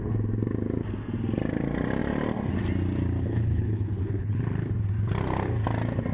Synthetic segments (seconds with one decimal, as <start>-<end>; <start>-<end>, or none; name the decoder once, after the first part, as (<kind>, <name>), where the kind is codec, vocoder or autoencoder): 3.2-4.4 (codec, HILCodec)